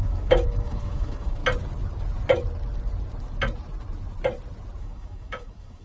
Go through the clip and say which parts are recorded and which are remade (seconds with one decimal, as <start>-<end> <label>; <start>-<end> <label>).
0.0-1.4 remade; 1.4-4.8 recorded; 4.8-5.8 remade